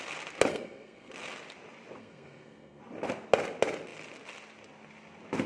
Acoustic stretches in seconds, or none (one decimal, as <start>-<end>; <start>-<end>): 0.0-0.5; 1.1-2.0; 2.8-5.5